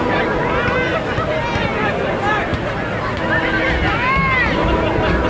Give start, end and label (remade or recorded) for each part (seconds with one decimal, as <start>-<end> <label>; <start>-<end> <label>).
0.0-5.3 recorded